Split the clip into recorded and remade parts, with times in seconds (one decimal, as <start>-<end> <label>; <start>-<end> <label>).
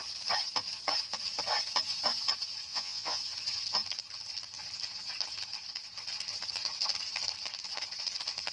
0.0-2.7 recorded; 2.7-3.2 remade; 3.2-8.5 recorded